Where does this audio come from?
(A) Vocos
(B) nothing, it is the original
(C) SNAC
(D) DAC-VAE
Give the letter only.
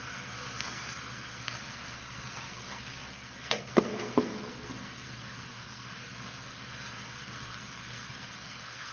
C